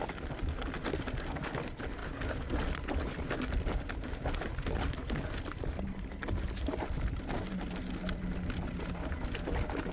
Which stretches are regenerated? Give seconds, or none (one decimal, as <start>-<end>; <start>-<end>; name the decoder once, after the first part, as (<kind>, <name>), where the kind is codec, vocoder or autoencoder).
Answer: none